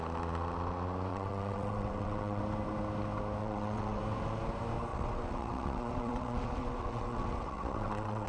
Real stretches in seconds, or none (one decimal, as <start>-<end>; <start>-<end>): 0.0-1.1; 2.4-3.4; 4.0-4.9